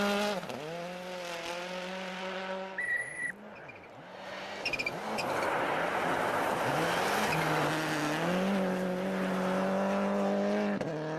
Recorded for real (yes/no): yes